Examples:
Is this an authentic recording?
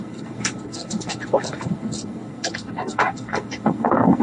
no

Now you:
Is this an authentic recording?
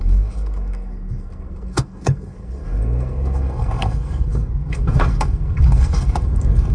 no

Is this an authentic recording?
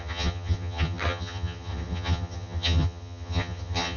no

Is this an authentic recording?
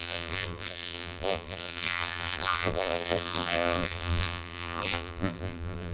no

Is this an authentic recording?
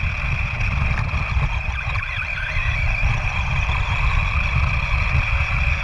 yes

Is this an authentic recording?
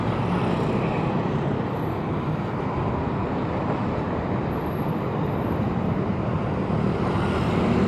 yes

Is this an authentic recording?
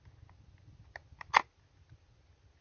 yes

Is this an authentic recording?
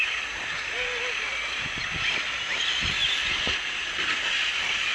yes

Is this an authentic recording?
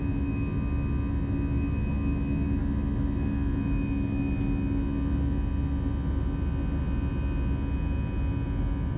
yes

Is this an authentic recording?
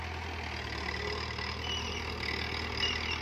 yes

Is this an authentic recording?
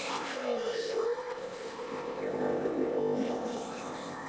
no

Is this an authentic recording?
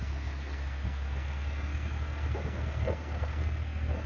no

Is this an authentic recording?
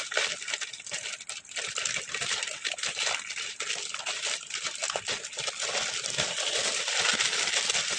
yes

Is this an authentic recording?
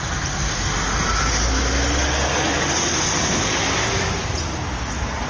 yes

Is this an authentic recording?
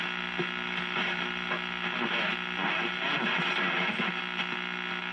yes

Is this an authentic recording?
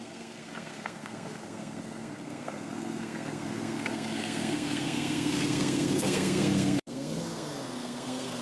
no